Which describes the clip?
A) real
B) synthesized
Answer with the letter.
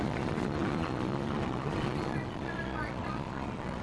B